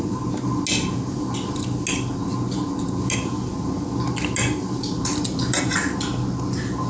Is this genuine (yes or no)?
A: yes